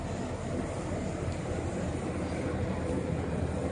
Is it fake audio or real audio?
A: real